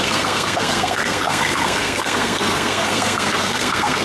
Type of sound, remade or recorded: remade